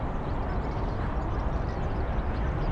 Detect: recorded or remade recorded